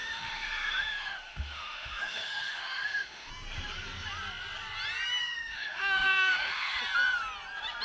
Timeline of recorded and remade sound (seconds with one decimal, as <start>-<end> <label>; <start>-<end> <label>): 0.0-3.3 remade; 3.3-5.2 recorded; 5.2-6.8 remade; 6.8-7.8 recorded